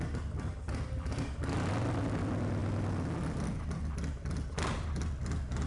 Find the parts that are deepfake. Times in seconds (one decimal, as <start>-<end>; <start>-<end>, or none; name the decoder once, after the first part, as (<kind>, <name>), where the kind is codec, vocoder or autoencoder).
none